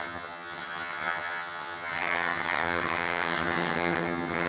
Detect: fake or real fake